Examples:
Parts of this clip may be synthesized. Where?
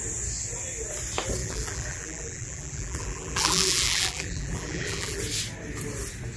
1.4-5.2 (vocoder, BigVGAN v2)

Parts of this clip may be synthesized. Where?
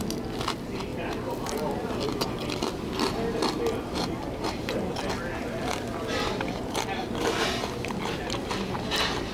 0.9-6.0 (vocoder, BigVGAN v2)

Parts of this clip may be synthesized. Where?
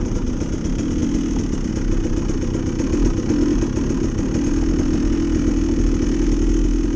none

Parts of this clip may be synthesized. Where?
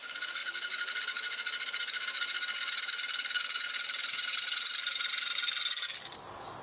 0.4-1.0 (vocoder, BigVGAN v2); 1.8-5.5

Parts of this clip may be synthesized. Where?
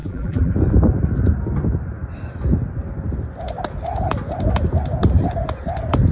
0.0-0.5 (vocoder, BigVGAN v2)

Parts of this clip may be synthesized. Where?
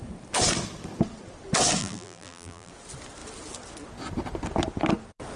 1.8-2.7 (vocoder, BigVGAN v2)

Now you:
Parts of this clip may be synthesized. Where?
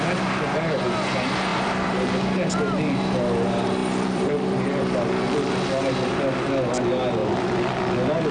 1.5-2.0 (vocoder, BigVGAN v2); 3.8-5.5; 7.2-7.8